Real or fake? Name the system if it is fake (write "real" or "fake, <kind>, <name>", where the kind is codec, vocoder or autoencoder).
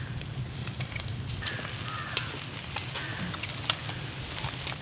real